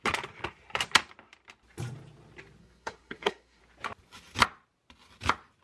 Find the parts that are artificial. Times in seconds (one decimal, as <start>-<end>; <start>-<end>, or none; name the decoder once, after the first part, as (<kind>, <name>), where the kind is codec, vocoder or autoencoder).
2.6-3.6 (codec, SNAC)